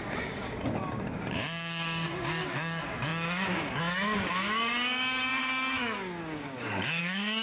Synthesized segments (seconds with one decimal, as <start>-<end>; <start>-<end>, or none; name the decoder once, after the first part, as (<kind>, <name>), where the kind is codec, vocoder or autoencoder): 0.0-7.4 (codec, DAC)